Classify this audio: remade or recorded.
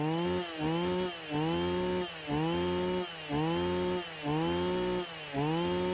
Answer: recorded